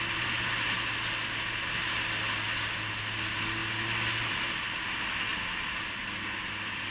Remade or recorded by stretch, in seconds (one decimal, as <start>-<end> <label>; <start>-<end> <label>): 0.0-6.9 recorded

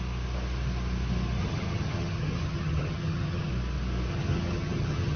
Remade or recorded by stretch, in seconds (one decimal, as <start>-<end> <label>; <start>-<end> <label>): 0.0-1.4 recorded; 1.4-3.5 remade; 3.5-4.1 recorded; 4.1-5.2 remade

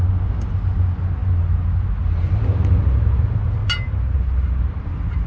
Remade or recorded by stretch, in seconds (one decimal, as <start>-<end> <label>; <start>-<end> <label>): 0.0-5.3 recorded

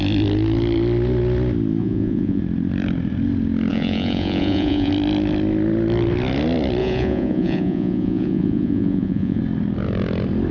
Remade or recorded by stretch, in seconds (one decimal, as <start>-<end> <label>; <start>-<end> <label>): 0.0-1.8 recorded; 1.8-2.4 remade; 2.4-3.7 recorded; 3.7-4.9 remade; 4.9-6.8 recorded; 6.8-9.4 remade; 9.4-10.5 recorded